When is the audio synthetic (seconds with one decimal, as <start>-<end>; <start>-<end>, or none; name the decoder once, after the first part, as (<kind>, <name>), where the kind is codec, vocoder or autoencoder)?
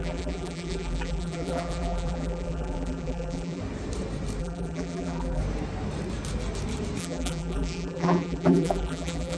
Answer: 0.0-3.6 (vocoder, BigVGAN v2); 4.4-5.4; 7.0-9.4